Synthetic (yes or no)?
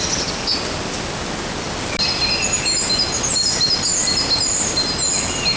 no